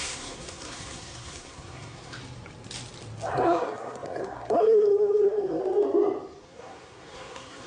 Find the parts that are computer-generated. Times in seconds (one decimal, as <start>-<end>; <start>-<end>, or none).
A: 0.0-2.2; 3.3-5.6; 6.4-7.7